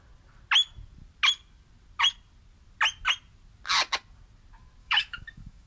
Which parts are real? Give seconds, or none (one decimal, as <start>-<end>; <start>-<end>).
0.0-4.8